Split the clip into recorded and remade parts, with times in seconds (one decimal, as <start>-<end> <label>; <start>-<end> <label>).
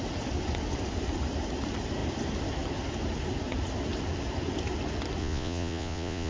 0.0-5.2 recorded; 5.2-6.3 remade